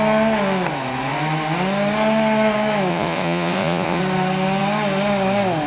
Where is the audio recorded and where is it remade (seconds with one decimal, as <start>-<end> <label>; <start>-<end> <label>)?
0.0-2.9 recorded; 2.9-4.0 remade; 4.0-5.7 recorded